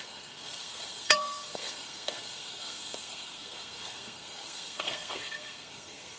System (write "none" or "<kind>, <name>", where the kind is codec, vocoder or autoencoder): codec, SNAC